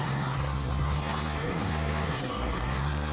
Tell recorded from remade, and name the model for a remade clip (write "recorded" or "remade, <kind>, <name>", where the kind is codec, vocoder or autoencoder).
remade, codec, SNAC